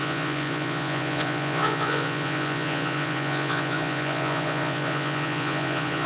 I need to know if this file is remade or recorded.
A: remade